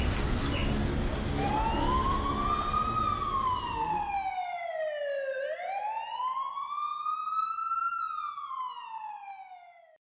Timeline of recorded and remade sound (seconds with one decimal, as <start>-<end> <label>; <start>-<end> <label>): 0.0-10.0 recorded